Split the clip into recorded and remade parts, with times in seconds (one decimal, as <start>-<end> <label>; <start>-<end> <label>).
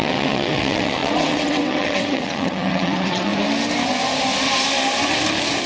0.0-3.3 remade; 3.3-5.7 recorded